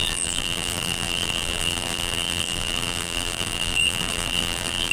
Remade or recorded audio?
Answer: remade